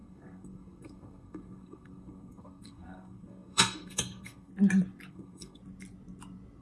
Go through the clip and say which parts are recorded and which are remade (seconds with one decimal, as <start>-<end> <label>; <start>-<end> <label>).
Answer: 0.0-4.5 remade; 4.5-5.1 recorded; 5.1-5.6 remade; 5.6-6.6 recorded